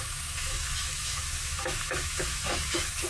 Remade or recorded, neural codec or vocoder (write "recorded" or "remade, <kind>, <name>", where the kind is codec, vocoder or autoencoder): remade, autoencoder, DAC-VAE